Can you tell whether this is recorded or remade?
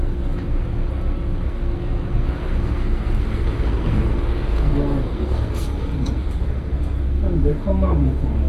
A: remade